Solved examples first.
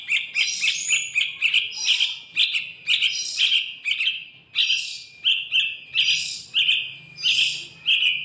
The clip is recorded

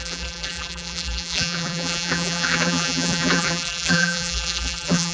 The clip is remade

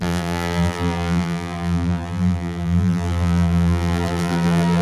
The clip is remade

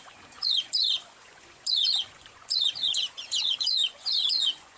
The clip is remade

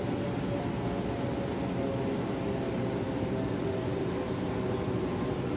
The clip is recorded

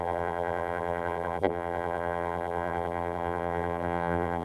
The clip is remade